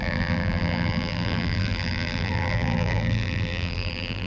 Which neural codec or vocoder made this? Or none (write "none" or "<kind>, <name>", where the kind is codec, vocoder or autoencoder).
vocoder, BigVGAN v2